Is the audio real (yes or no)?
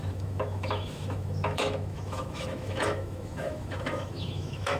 no